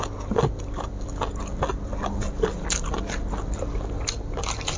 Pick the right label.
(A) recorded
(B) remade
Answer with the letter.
A